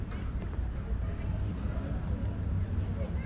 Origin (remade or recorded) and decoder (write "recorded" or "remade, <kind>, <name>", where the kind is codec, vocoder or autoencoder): recorded